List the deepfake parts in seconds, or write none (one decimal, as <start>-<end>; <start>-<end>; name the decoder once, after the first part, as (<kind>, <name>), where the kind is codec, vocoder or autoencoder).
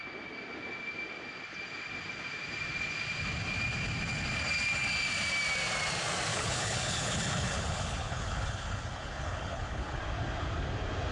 6.3-10.0 (codec, HILCodec)